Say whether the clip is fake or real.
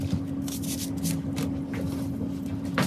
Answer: real